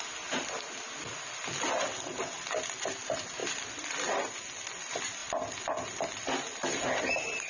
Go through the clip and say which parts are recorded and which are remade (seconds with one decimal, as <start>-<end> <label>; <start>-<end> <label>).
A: 0.0-7.5 recorded